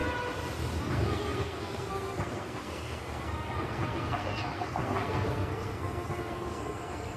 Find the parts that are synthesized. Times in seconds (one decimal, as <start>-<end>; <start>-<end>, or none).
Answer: 0.9-7.2